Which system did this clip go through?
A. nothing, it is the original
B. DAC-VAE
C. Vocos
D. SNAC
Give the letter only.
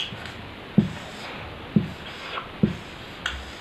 A